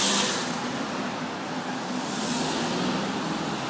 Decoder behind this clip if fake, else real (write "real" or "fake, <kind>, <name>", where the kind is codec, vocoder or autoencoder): real